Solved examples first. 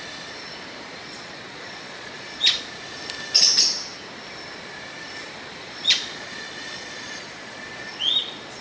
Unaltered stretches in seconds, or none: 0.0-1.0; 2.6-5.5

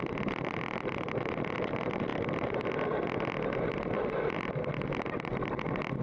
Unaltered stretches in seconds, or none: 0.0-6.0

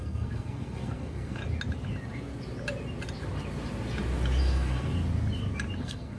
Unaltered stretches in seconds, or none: 1.4-4.4; 4.9-5.8